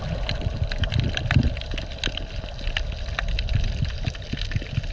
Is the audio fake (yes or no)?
no